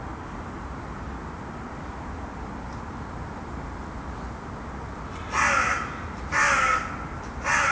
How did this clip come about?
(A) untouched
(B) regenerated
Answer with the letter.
A